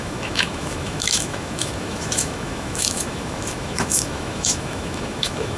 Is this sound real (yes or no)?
no